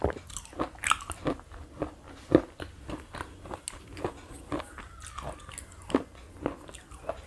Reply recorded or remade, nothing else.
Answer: recorded